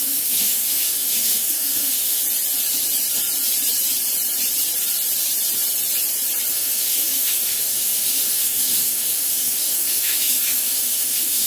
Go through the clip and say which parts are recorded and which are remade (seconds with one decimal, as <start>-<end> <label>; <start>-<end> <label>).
0.0-2.2 remade; 2.2-6.5 recorded; 6.5-11.5 remade